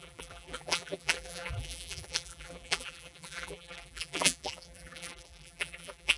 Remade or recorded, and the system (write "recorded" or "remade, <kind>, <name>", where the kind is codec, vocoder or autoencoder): remade, vocoder, BigVGAN v2